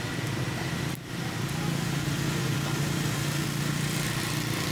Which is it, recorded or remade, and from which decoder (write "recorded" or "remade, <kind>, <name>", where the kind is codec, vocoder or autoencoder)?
recorded